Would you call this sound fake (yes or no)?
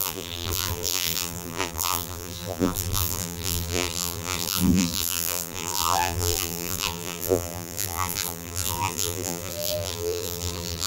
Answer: yes